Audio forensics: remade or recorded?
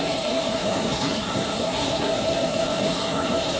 remade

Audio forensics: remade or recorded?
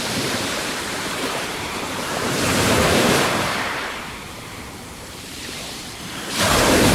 remade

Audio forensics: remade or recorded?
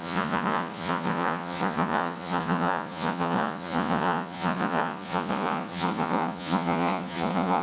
remade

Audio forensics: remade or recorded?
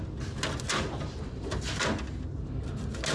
recorded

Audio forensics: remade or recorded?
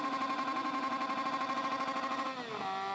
recorded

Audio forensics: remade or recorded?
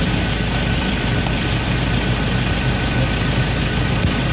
remade